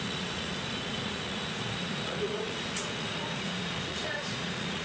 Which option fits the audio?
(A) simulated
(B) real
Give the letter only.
A